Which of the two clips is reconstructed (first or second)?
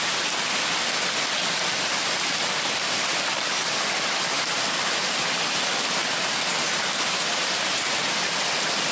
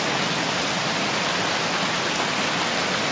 first